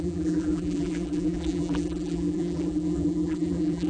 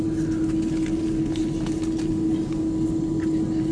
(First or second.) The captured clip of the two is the second